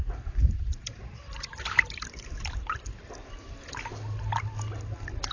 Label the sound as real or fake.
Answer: real